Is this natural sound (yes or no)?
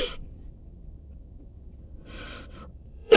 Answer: no